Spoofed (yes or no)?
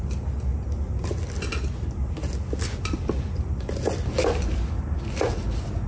no